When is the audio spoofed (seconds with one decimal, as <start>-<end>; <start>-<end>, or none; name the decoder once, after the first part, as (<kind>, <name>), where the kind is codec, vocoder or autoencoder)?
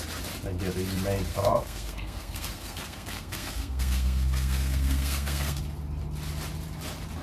1.3-5.6 (codec, SNAC)